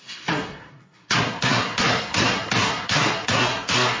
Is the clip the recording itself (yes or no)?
no